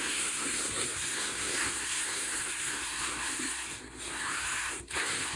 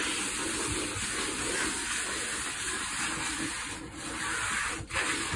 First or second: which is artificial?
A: first